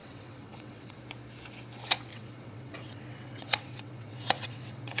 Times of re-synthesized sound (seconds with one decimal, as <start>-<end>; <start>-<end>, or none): 0.0-1.0; 2.1-5.0